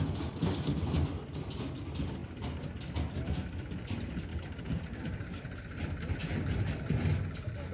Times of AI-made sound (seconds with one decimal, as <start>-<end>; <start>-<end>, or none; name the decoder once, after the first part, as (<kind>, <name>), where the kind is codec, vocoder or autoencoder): 4.3-5.4 (codec, DAC)